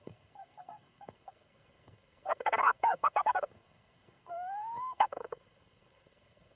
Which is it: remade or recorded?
remade